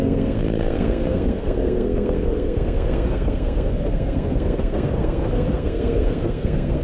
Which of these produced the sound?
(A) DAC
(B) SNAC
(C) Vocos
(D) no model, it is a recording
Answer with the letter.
B